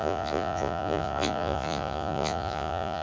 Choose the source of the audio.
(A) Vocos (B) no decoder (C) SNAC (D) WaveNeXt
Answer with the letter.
A